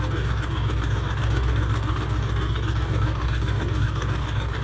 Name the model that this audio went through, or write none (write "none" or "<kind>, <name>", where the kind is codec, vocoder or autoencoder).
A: codec, DAC